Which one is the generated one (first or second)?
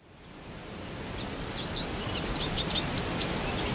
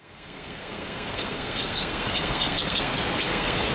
second